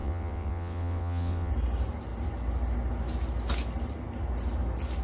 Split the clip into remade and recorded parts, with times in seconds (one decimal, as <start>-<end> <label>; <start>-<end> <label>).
0.0-1.5 remade; 1.5-5.0 recorded